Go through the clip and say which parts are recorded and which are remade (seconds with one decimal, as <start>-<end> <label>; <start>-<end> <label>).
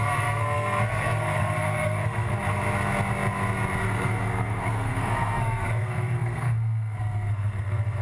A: 0.0-2.3 remade; 2.3-3.8 recorded; 3.8-8.0 remade